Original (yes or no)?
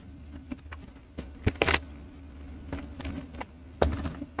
yes